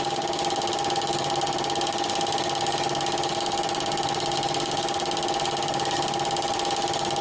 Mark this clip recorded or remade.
recorded